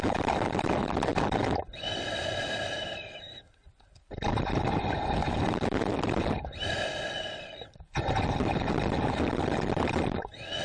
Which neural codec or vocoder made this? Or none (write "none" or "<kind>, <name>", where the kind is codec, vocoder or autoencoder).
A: vocoder, BigVGAN v2